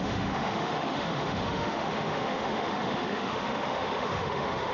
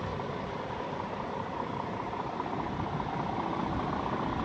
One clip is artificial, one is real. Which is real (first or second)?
second